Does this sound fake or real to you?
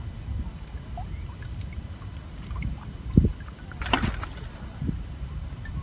real